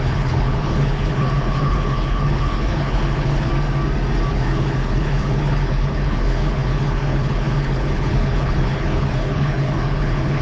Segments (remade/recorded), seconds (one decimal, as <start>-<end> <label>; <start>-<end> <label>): 0.0-3.5 remade; 3.5-4.3 recorded; 4.3-10.4 remade